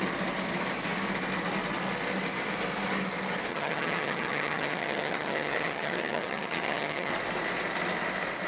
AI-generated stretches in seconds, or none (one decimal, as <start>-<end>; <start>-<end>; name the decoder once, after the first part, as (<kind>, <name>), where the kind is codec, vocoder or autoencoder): 3.5-7.1 (vocoder, HiFi-GAN)